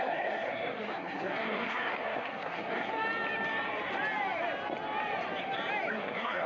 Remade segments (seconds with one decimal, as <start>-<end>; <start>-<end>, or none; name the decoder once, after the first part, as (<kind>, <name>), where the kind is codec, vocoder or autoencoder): 0.0-2.9 (codec, SNAC); 5.9-6.5